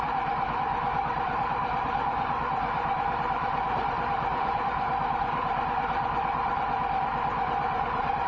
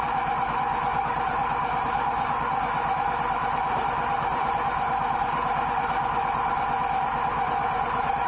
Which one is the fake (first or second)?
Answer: first